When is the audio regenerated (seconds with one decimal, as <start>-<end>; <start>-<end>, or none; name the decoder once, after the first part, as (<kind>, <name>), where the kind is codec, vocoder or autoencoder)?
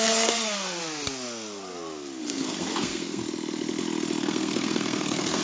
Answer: 0.0-0.8 (codec, SNAC); 2.2-3.2; 4.2-5.4